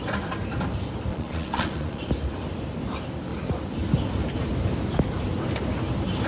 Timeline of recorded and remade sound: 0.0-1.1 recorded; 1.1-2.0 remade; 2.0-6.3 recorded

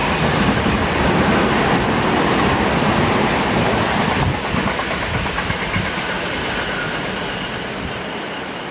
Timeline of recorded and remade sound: 0.0-8.7 remade

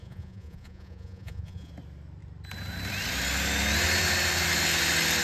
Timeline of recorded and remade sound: 0.0-1.7 remade; 1.7-5.2 recorded